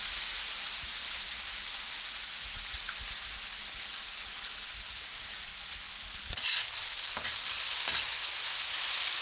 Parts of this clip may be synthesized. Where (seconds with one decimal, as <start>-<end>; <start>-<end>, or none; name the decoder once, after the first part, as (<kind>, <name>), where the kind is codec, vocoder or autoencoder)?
0.0-1.0 (vocoder, Vocos); 1.9-2.8; 4.9-5.5; 8.2-9.2

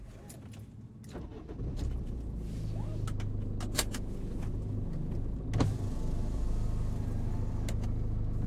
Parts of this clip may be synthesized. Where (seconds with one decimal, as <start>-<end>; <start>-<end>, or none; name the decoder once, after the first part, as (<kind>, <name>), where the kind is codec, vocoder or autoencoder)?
none